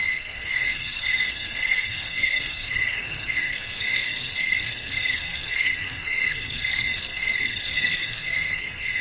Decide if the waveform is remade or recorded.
remade